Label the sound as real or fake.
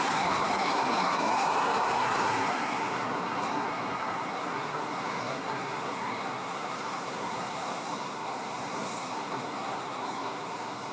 fake